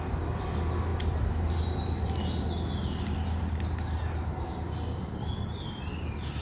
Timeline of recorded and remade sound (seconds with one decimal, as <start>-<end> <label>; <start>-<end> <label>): 0.0-6.4 recorded